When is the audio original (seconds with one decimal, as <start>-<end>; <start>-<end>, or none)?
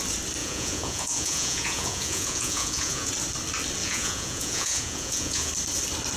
0.0-0.4; 3.1-3.8; 5.5-6.2